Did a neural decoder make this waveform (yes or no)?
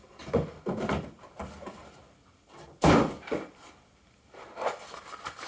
no